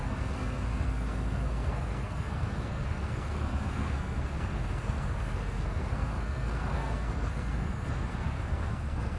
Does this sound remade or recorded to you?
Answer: remade